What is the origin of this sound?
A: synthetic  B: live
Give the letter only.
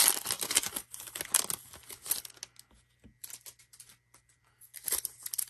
B